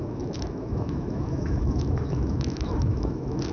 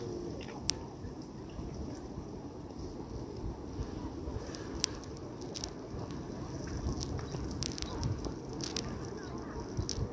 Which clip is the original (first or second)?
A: second